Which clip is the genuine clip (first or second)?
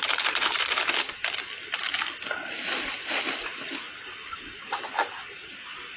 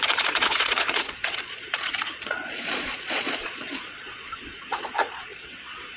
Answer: first